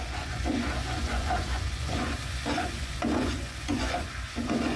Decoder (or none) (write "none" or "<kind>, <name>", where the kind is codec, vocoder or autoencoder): vocoder, Vocos